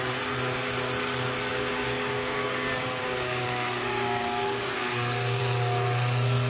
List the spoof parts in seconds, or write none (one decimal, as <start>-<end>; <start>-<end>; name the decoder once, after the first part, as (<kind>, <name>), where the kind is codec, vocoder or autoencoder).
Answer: 1.5-5.4 (codec, DAC)